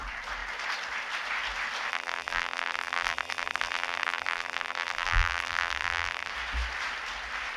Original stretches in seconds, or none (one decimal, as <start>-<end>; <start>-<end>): 0.0-1.9; 6.3-7.6